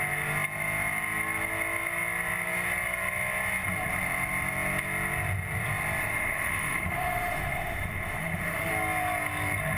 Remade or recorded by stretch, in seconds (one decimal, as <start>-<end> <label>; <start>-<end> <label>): 0.0-6.0 recorded; 6.0-8.7 remade; 8.7-9.8 recorded